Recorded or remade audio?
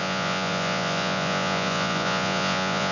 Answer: remade